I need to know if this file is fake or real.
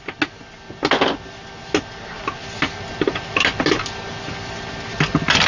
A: real